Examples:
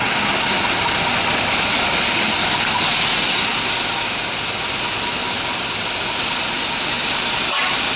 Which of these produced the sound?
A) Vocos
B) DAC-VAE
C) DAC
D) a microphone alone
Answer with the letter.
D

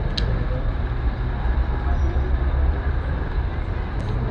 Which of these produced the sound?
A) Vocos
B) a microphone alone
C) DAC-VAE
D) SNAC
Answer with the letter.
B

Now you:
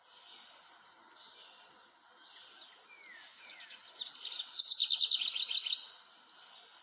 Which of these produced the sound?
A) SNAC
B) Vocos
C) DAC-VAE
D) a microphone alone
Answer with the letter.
D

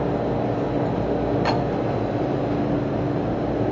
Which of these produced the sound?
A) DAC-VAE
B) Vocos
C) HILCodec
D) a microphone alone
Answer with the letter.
D